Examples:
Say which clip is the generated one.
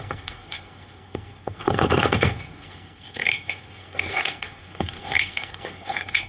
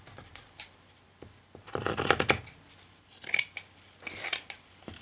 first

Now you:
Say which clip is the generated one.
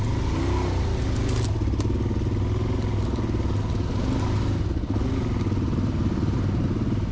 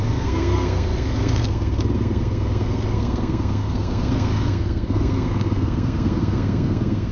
second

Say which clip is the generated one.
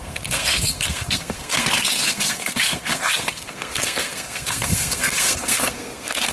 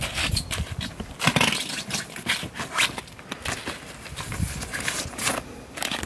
first